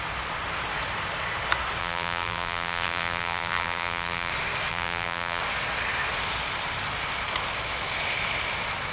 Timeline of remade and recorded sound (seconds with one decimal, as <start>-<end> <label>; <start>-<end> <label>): 0.0-1.8 recorded; 1.8-4.3 remade; 4.3-4.7 recorded; 4.7-5.4 remade; 5.4-8.9 recorded